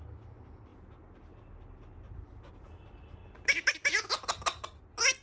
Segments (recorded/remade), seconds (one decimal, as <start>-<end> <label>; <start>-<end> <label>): 0.0-5.2 recorded